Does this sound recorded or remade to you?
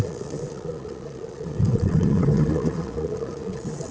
remade